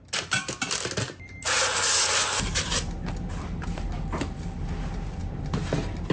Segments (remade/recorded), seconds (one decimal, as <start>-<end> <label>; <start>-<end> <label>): 0.0-6.1 recorded